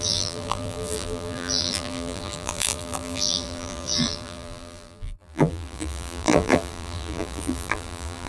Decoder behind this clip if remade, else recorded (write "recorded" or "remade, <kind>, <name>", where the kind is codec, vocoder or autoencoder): remade, vocoder, BigVGAN v2